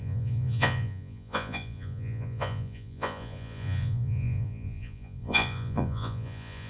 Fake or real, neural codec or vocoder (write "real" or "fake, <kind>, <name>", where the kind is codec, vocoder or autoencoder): fake, vocoder, Vocos